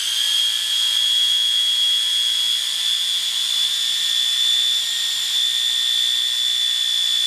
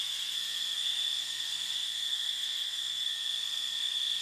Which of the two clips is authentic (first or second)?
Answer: first